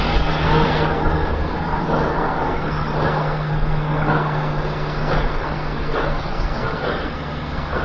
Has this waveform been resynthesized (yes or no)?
yes